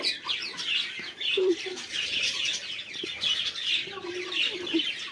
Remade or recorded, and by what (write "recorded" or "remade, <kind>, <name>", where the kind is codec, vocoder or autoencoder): recorded